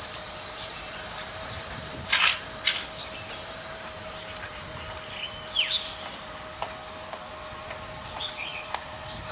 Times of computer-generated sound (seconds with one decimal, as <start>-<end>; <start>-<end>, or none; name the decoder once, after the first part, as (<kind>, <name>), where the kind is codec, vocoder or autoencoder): 0.0-2.3 (vocoder, BigVGAN v2); 3.3-4.7; 7.9-9.3